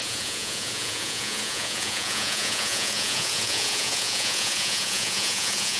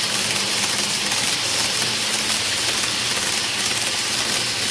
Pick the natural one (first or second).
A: second